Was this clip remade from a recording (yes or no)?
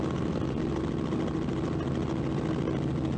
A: no